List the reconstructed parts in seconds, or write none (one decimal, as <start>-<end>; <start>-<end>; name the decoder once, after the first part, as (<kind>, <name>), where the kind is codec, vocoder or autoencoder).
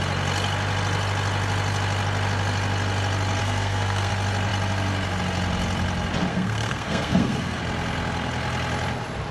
3.4-4.1 (codec, SNAC); 6.3-7.6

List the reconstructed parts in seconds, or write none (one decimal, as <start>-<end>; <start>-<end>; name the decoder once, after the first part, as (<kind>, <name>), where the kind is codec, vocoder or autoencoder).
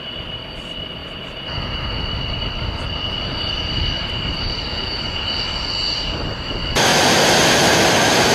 4.7-5.3 (vocoder, Vocos)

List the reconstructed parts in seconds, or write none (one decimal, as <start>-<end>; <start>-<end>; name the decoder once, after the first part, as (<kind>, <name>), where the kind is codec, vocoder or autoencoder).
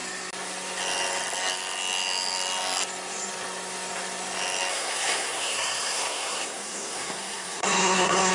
4.7-8.3 (codec, SNAC)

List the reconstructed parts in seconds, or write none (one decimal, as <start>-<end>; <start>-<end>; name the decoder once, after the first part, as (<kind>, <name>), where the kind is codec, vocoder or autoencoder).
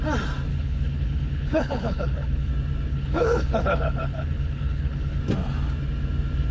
0.5-2.5 (codec, HILCodec); 2.9-5.2